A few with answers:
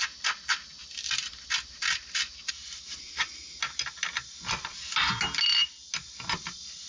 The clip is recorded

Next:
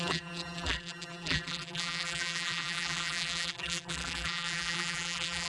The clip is remade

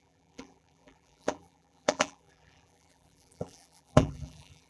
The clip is remade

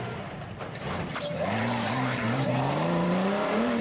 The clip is remade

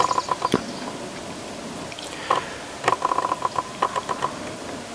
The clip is remade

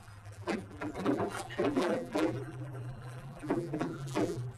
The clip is remade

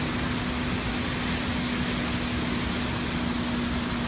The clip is recorded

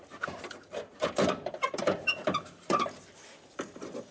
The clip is remade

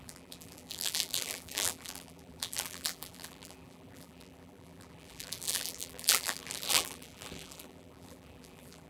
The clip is remade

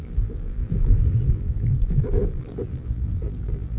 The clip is remade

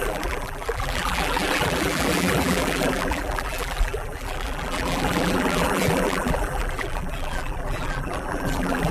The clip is remade